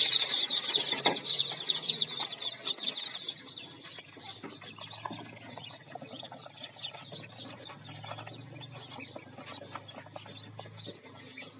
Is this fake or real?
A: real